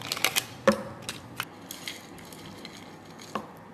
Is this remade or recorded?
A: recorded